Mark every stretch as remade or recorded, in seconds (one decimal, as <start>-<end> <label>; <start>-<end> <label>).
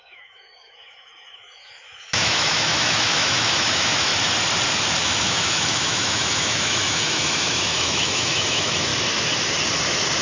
0.0-4.1 remade; 4.1-5.0 recorded; 5.0-8.9 remade; 8.9-10.2 recorded